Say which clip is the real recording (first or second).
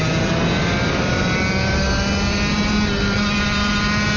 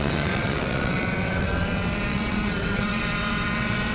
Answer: first